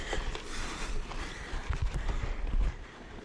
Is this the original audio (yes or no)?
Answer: yes